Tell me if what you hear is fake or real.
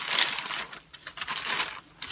real